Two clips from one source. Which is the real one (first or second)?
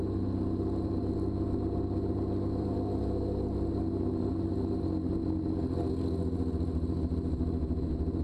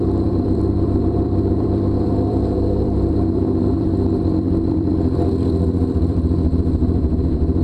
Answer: first